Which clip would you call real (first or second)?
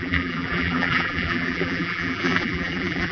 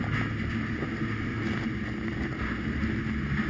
second